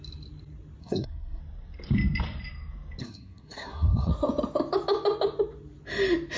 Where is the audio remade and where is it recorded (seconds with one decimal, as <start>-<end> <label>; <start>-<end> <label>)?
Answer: 0.0-0.8 recorded; 0.8-1.4 remade; 1.4-3.0 recorded; 3.0-4.1 remade; 4.1-6.4 recorded

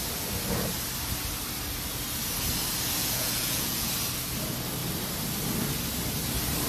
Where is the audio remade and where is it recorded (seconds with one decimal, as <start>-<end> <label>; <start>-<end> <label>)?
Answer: 0.0-3.0 recorded; 3.0-3.9 remade; 3.9-6.7 recorded

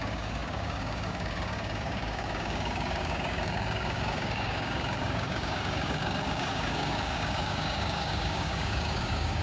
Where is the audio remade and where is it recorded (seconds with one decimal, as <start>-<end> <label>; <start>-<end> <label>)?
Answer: 0.0-9.4 remade